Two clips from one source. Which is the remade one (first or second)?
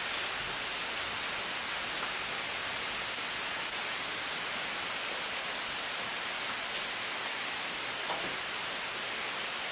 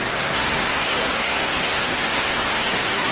second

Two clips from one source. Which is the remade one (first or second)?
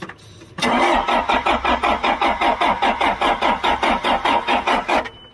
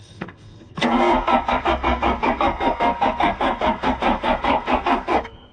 second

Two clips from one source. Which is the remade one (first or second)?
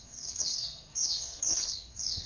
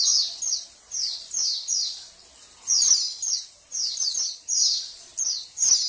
first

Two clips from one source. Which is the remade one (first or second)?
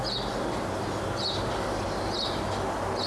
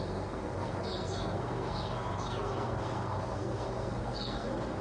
second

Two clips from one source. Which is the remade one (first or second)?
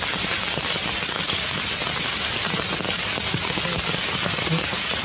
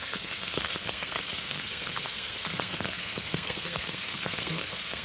second